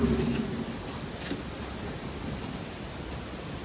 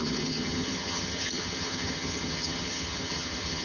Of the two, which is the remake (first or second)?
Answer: second